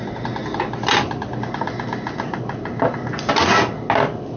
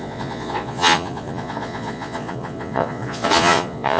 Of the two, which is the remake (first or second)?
second